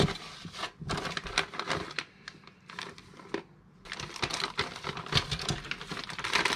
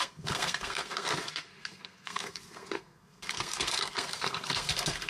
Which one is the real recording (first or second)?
first